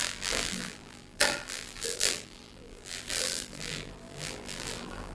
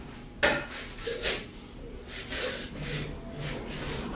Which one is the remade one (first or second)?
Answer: first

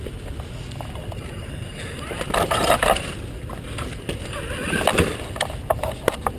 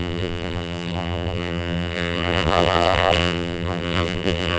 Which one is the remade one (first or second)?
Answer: second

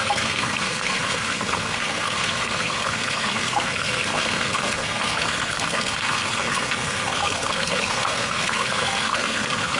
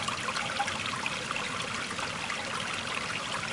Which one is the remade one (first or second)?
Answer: first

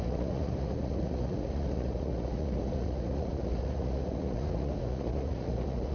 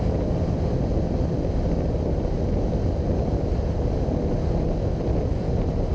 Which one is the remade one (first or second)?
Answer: first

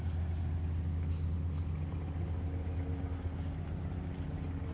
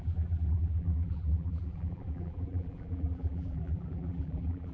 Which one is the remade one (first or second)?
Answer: second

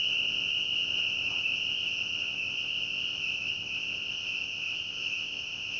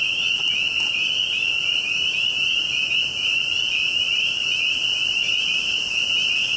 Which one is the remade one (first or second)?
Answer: first